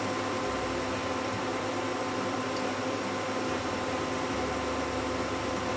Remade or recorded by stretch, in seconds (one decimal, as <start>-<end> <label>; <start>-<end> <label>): 0.0-5.8 recorded